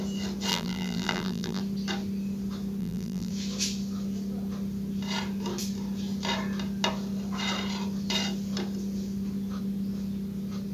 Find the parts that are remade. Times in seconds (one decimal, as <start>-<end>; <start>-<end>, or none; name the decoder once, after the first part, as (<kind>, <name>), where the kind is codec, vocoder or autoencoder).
0.5-1.6 (vocoder, BigVGAN v2); 2.8-3.3